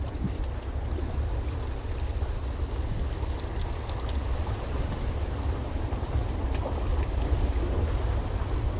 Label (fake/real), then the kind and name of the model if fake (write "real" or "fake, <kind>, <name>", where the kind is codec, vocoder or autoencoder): real